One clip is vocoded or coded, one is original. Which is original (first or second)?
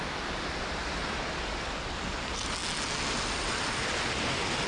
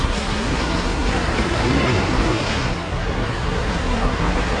first